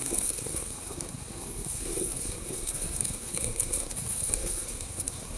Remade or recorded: remade